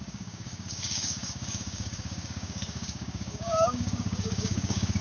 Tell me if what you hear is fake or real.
fake